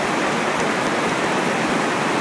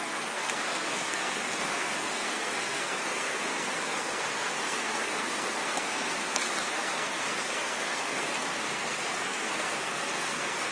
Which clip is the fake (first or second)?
second